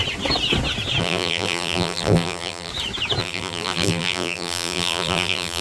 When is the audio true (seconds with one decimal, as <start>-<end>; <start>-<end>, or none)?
0.0-1.0; 2.7-3.2